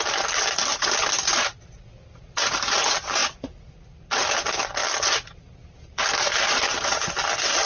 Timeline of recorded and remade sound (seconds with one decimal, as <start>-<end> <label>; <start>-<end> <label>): 0.0-0.7 recorded; 0.7-1.3 remade; 1.3-7.7 recorded